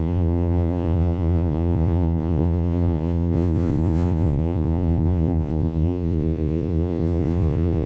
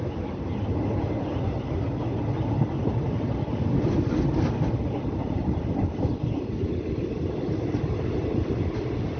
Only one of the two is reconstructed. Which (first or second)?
first